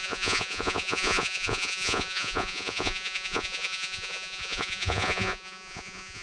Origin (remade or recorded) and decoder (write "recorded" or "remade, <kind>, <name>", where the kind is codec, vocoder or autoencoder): remade, vocoder, Vocos